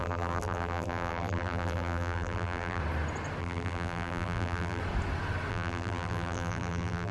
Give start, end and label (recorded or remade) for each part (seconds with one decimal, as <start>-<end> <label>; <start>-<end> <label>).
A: 0.0-2.8 remade; 2.8-3.4 recorded; 3.4-4.8 remade; 4.8-5.5 recorded; 5.5-7.1 remade